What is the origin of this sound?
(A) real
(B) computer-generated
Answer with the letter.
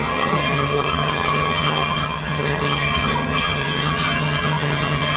B